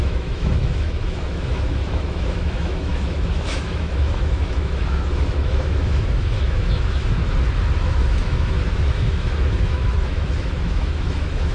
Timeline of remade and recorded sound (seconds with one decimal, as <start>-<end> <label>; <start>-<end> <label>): 0.0-7.2 remade; 7.2-7.8 recorded; 7.8-11.5 remade